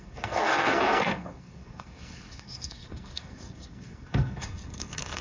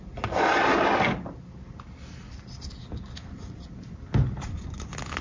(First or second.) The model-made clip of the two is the first